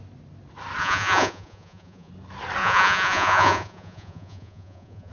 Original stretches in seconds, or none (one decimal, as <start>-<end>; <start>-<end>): 0.0-0.8; 2.1-2.6